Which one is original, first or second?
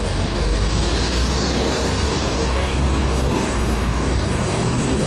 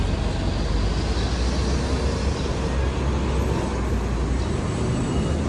second